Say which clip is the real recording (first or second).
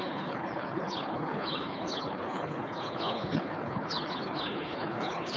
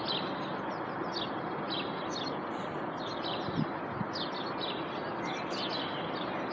second